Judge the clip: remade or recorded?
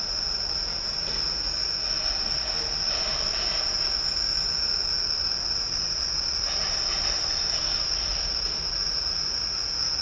recorded